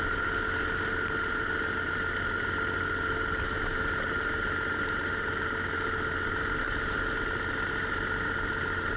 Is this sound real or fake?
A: real